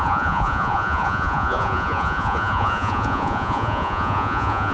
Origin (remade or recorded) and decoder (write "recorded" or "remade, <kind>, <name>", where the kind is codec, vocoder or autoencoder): remade, vocoder, Vocos